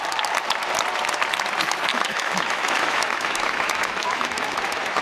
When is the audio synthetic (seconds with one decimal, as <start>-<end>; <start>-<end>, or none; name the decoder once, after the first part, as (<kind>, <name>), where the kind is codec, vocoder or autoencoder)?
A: 1.9-5.0 (autoencoder, DAC-VAE)

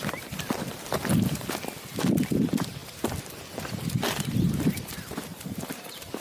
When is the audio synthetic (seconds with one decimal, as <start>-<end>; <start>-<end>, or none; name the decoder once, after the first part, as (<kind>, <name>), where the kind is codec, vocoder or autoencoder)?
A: 0.0-0.5 (vocoder, BigVGAN v2); 5.3-6.2

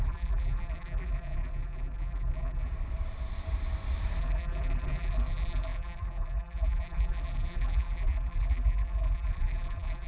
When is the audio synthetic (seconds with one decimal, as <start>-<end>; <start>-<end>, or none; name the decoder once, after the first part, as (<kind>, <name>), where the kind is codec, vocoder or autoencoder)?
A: 0.0-2.7 (vocoder, BigVGAN v2); 4.2-10.1

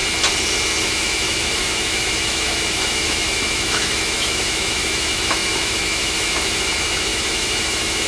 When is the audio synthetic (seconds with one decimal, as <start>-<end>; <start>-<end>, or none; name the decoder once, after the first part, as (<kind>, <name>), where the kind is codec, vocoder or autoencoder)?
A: 0.8-8.1 (autoencoder, DAC-VAE)